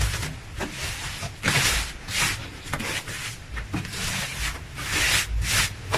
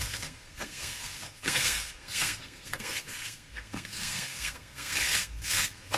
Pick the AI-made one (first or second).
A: second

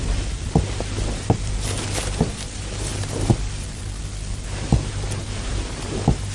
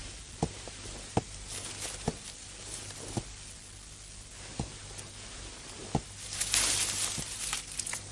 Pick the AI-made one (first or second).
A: first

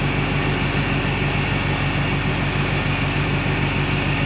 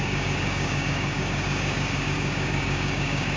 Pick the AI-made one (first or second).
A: second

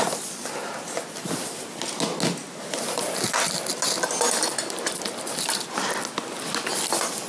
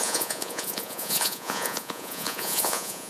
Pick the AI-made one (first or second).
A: second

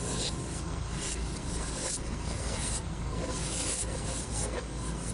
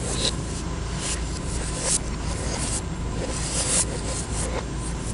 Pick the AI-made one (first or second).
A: first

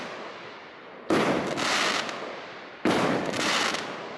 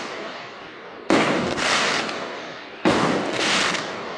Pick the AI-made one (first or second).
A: second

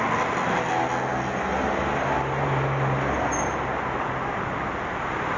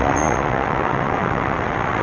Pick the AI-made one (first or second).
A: second